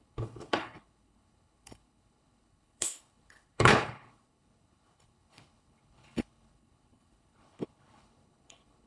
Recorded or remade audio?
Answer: remade